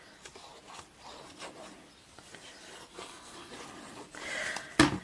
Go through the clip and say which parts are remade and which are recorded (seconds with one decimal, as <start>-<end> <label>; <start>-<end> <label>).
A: 0.0-2.9 recorded; 2.9-3.5 remade; 3.5-5.0 recorded